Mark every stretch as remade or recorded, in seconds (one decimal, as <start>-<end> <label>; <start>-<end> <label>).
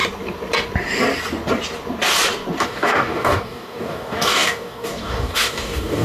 0.0-2.6 recorded; 2.6-6.0 remade